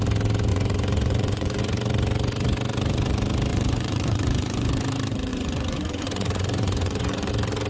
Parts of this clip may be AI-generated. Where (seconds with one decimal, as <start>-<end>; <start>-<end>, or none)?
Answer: 0.5-1.6; 3.5-4.7; 5.3-7.3